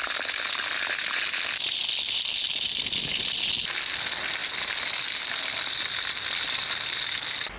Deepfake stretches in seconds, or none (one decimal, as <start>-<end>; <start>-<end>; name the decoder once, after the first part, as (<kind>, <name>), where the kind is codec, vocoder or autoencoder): none